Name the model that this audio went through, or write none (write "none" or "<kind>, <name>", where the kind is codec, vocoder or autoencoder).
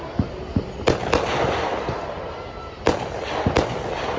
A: none